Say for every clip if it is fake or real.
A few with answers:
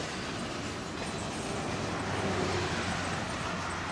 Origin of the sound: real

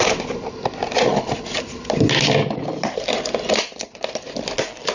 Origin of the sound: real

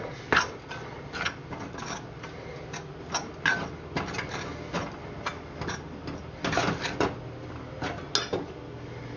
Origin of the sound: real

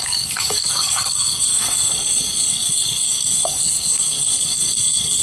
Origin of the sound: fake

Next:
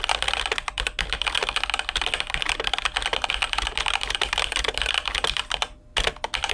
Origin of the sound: real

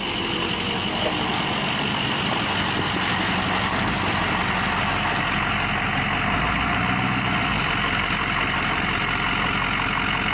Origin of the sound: real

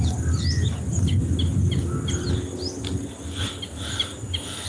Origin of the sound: real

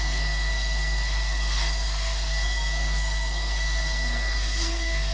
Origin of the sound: fake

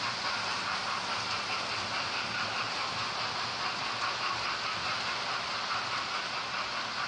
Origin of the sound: real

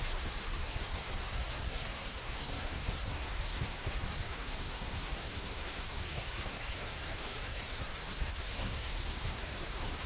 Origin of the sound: fake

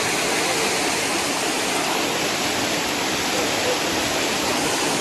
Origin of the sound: real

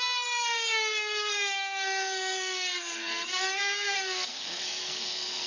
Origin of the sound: fake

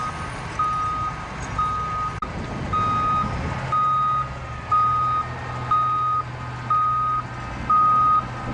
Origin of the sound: real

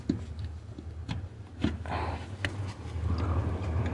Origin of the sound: real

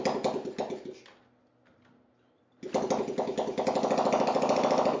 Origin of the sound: real